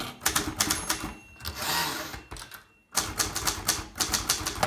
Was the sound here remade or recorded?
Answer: recorded